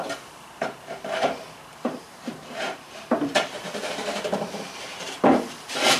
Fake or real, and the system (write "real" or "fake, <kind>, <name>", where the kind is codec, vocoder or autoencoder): fake, vocoder, BigVGAN v2